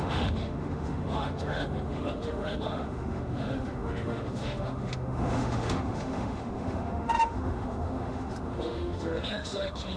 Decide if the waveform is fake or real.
fake